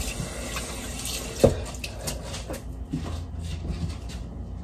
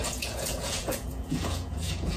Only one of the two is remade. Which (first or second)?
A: second